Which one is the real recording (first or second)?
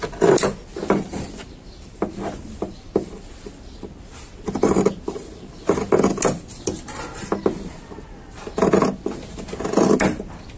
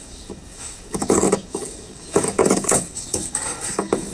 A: first